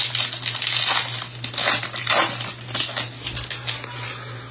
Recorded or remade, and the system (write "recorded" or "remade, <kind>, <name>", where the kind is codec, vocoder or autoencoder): recorded